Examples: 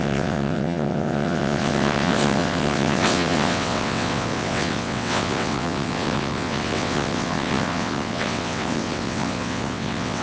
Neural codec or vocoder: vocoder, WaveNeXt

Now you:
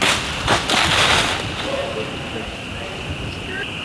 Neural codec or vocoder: none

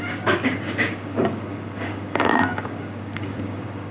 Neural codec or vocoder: codec, DAC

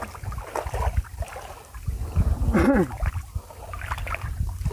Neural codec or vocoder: none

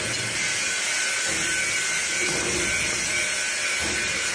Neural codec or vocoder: none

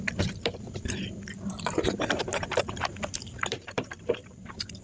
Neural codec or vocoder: vocoder, BigVGAN v2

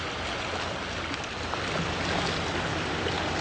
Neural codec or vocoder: none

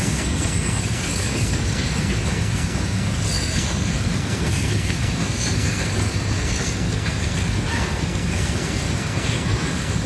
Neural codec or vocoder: codec, SNAC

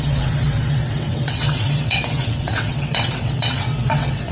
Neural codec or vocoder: vocoder, WaveNeXt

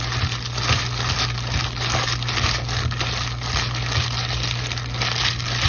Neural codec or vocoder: none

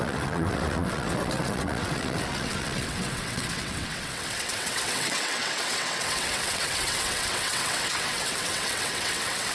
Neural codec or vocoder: vocoder, WaveNeXt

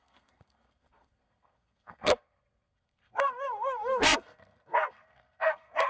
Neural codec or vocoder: codec, SNAC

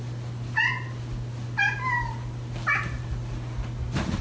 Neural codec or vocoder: none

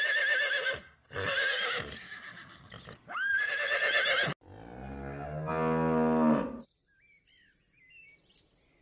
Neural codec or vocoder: none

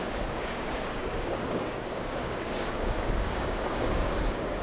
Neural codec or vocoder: codec, DAC